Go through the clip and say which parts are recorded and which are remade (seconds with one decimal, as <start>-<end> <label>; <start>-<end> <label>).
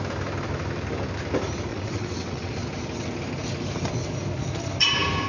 0.0-1.7 recorded; 1.7-2.5 remade; 2.5-5.3 recorded